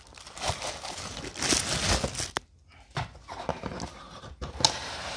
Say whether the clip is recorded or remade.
recorded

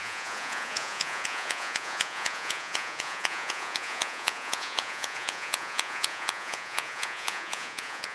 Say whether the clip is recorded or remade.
remade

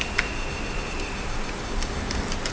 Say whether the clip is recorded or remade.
recorded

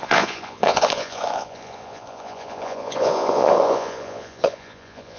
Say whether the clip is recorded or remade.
remade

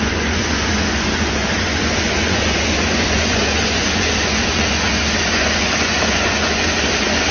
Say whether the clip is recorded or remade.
remade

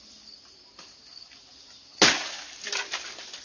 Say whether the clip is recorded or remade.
recorded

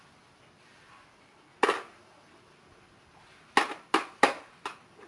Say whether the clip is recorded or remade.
recorded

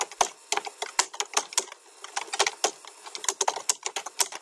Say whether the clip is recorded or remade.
recorded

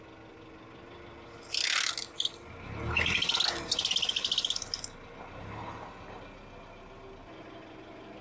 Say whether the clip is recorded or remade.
recorded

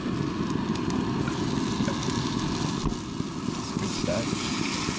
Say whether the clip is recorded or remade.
recorded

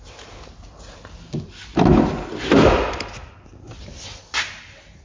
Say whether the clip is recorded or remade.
recorded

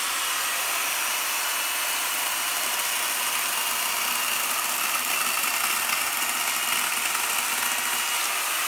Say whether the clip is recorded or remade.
recorded